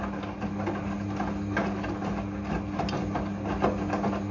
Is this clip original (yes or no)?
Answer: yes